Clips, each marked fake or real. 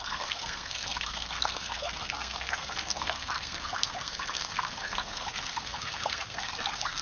fake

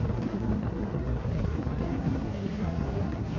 fake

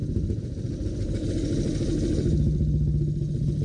real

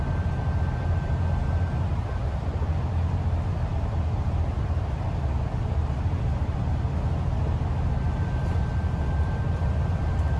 fake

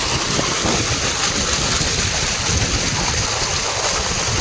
real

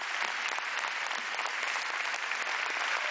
real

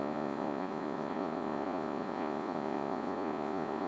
fake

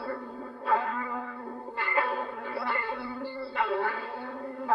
fake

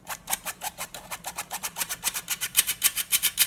fake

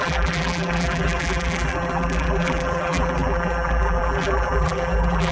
fake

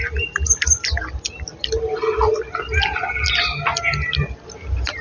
real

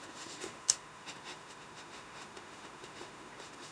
fake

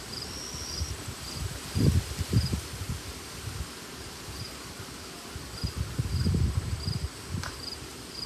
real